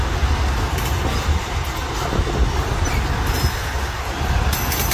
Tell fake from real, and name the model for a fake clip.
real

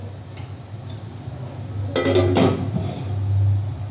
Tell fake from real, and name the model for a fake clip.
real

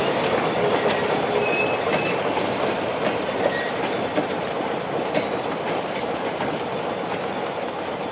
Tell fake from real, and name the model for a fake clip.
real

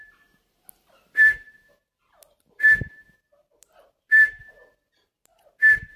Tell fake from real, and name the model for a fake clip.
real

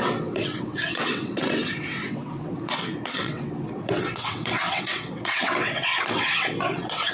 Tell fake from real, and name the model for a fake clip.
fake, vocoder, WaveNeXt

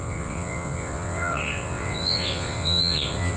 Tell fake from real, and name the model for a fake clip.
fake, vocoder, WaveNeXt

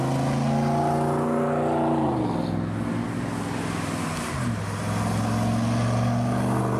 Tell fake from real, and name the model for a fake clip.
real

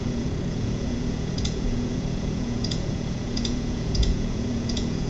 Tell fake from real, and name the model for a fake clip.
fake, vocoder, Vocos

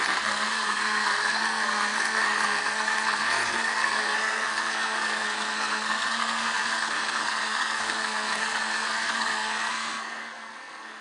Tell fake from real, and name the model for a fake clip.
fake, codec, SNAC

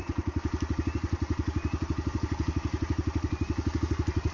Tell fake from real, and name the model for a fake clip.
real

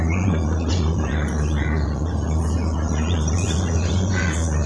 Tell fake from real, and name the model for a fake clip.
fake, vocoder, Vocos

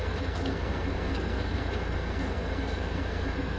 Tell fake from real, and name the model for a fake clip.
fake, codec, SNAC